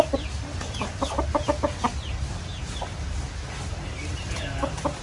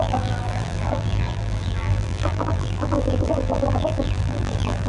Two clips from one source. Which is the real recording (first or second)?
first